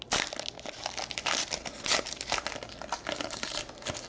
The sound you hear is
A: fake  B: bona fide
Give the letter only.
B